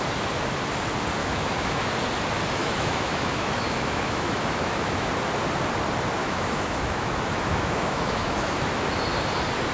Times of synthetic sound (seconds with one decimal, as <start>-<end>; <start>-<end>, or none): 1.2-1.9; 2.6-5.1; 6.2-8.9